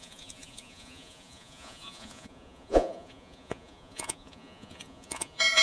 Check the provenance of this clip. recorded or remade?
remade